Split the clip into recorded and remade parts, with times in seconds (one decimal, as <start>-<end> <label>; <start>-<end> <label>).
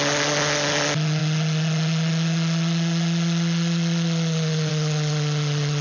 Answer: 0.0-5.8 recorded